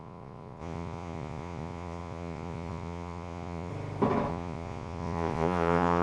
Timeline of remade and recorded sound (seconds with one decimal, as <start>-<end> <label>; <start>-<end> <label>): 0.0-3.7 remade; 3.7-4.3 recorded; 4.3-6.0 remade

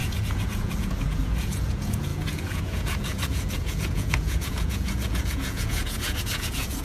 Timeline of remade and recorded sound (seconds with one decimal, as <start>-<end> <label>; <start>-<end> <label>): 0.0-6.8 remade

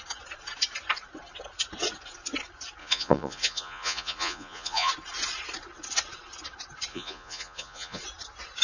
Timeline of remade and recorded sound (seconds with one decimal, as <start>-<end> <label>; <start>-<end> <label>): 0.0-2.8 recorded; 2.8-4.9 remade; 4.9-6.9 recorded; 6.9-8.0 remade; 8.0-8.6 recorded

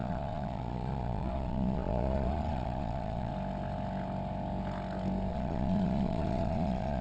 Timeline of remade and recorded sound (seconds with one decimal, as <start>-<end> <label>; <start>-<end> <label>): 0.0-3.3 remade; 3.3-5.3 recorded; 5.3-7.0 remade

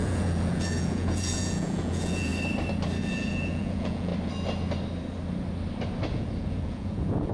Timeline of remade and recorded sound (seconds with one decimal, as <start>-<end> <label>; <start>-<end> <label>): 0.0-2.3 remade; 2.3-3.0 recorded; 3.0-4.1 remade; 4.1-6.1 recorded; 6.1-7.3 remade